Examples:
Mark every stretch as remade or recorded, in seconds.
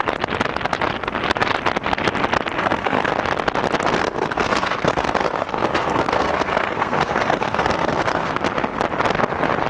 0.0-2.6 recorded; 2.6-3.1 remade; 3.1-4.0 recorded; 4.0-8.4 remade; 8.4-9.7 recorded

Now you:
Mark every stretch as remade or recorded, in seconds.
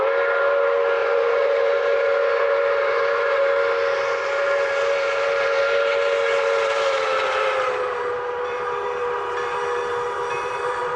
0.0-1.0 recorded; 1.0-3.4 remade; 3.4-11.0 recorded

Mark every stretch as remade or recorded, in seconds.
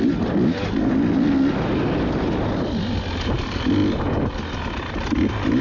0.0-5.6 recorded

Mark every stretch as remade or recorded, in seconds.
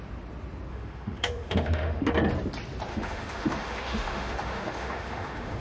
0.0-0.7 recorded; 0.7-2.1 remade; 2.1-2.9 recorded; 2.9-5.6 remade